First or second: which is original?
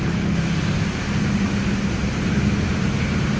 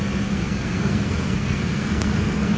first